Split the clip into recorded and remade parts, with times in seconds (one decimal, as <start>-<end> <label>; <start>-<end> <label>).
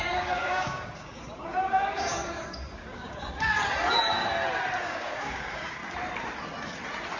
0.0-3.6 remade; 3.6-4.8 recorded; 4.8-5.8 remade; 5.8-7.2 recorded